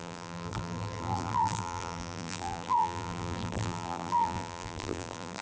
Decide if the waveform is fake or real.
fake